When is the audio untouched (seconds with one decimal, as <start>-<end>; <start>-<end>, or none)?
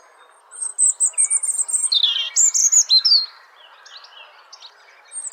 0.0-5.3